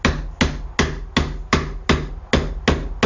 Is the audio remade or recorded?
recorded